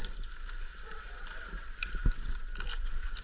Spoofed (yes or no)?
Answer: no